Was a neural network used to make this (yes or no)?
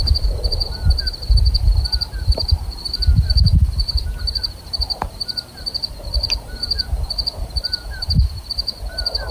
yes